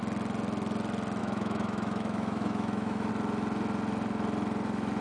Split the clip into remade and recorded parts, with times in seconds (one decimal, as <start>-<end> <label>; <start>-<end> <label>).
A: 0.0-1.2 recorded; 1.2-3.1 remade; 3.1-5.0 recorded